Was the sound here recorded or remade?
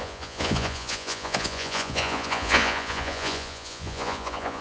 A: remade